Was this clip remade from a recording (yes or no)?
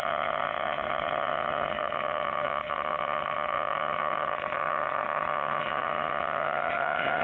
yes